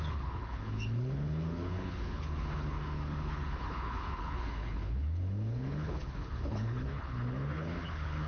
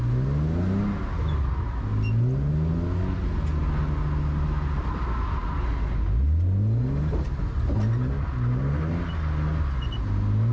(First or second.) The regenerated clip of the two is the first